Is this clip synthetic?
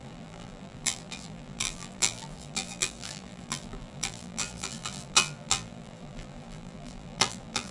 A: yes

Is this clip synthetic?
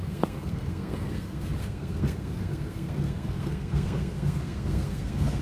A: yes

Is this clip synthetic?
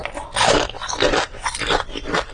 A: no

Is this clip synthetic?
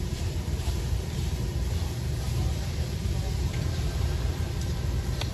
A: yes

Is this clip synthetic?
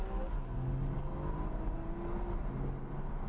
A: no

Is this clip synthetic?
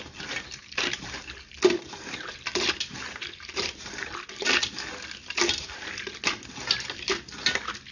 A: no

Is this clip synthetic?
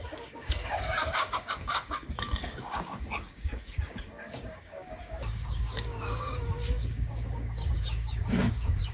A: yes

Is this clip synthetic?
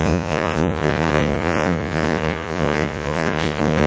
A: yes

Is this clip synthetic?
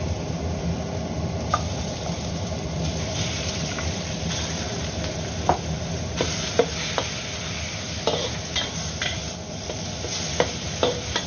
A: yes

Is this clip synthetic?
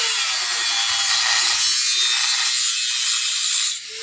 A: no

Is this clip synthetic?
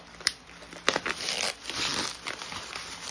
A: yes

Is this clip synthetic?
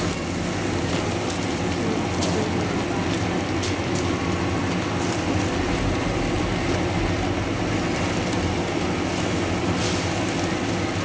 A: no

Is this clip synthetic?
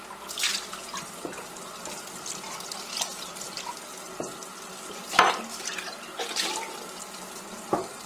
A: no